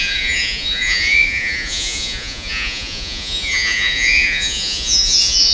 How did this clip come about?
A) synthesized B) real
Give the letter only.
A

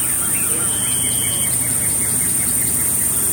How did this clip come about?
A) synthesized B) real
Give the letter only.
A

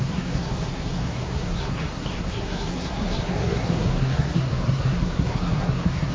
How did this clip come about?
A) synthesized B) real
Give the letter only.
A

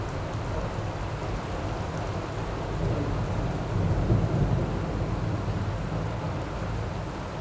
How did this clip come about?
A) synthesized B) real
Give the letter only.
B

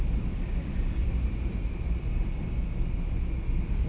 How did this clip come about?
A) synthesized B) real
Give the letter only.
A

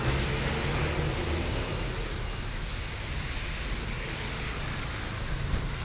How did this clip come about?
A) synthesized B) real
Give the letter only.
B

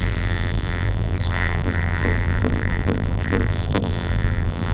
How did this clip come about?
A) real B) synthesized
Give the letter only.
B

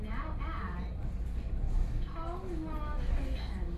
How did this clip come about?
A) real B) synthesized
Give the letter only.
A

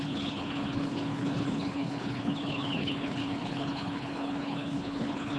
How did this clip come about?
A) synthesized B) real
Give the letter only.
A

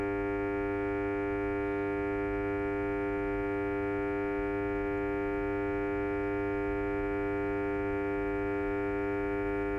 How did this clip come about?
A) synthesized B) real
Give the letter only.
B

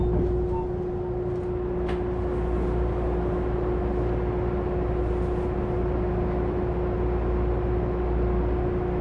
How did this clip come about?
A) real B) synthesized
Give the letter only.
A